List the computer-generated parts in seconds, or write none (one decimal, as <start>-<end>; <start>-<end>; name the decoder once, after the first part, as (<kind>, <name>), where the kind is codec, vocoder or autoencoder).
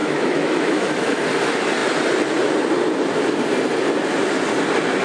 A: 0.0-1.2 (autoencoder, DAC-VAE)